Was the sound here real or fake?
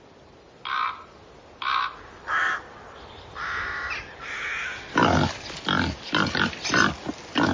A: real